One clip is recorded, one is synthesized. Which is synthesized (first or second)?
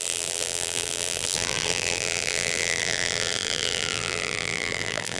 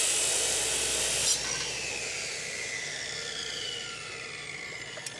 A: first